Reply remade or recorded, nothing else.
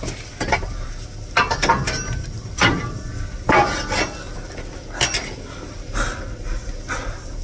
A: recorded